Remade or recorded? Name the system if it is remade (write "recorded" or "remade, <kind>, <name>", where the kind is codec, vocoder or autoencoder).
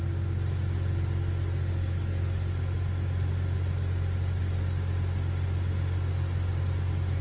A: recorded